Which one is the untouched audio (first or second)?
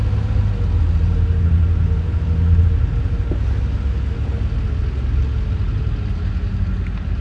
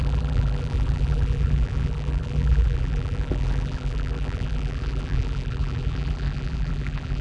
first